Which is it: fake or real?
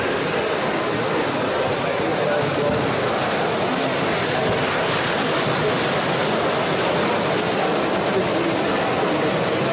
real